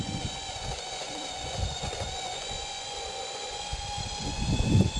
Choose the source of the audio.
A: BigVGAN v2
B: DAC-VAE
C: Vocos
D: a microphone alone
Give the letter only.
C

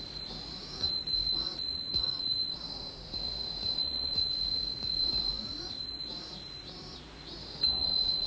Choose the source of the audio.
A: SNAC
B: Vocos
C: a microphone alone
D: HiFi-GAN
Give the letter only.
B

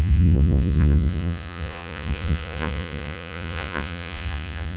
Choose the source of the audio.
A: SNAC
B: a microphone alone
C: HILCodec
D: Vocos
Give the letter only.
D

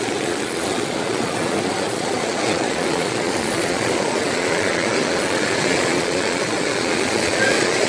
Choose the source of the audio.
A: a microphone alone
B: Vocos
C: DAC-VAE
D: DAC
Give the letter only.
B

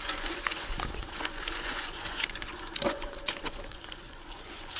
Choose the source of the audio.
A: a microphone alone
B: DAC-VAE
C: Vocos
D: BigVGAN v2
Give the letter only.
C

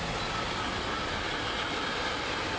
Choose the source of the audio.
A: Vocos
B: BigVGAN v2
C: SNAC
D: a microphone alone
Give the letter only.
D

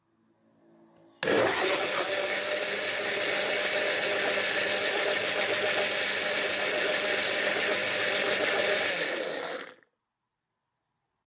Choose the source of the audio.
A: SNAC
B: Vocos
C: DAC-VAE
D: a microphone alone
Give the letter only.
D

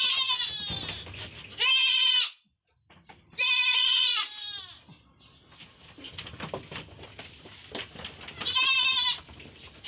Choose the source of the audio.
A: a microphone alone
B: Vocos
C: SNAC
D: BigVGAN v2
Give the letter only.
A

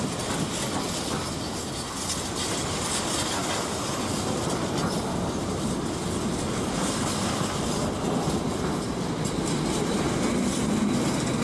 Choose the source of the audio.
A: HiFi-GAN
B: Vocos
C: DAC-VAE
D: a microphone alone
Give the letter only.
D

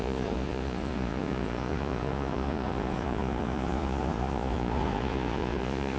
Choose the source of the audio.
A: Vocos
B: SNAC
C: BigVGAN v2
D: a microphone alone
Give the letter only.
A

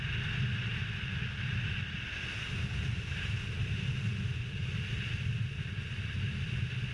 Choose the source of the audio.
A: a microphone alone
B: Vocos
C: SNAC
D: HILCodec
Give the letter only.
A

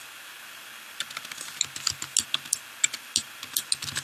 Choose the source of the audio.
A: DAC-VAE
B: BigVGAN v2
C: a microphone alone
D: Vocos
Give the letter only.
C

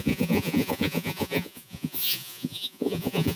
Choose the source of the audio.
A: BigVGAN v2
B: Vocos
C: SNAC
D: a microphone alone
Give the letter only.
B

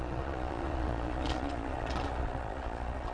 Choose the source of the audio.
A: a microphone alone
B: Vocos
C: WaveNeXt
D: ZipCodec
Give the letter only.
B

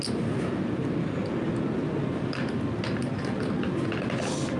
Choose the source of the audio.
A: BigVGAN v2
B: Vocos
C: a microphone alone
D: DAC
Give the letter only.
C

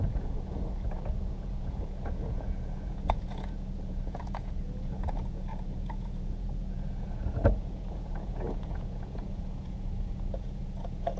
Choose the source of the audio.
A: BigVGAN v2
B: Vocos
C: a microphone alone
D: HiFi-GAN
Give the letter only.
B